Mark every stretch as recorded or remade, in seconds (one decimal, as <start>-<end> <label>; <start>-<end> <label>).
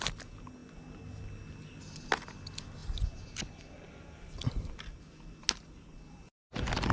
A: 0.0-6.9 recorded